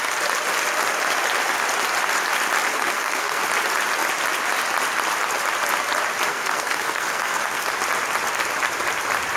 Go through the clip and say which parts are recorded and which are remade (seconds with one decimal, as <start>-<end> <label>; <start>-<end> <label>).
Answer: 0.0-2.7 recorded; 2.7-3.4 remade; 3.4-6.3 recorded; 6.3-7.7 remade; 7.7-9.4 recorded